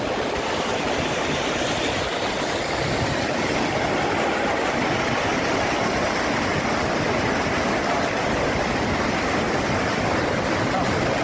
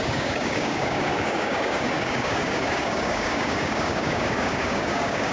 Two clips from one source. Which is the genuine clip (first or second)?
first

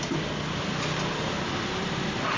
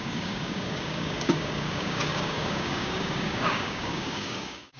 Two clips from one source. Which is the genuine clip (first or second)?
first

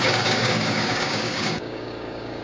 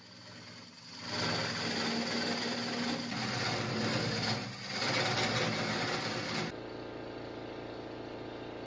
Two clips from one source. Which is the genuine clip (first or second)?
second